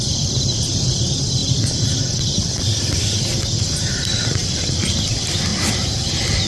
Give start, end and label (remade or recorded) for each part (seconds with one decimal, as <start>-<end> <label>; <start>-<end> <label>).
0.0-1.4 recorded; 1.4-3.0 remade; 3.0-4.4 recorded; 4.4-5.1 remade; 5.1-5.5 recorded; 5.5-6.1 remade; 6.1-6.5 recorded